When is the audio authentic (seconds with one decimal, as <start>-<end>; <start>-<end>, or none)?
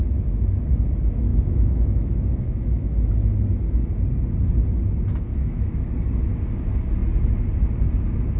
0.0-1.3; 3.1-5.3; 5.8-8.4